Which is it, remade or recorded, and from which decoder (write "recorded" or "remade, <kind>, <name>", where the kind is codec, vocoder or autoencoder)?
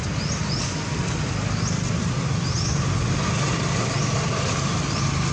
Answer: recorded